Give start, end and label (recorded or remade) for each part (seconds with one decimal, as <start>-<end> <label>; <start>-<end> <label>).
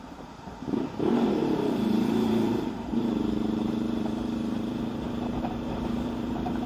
0.0-6.7 remade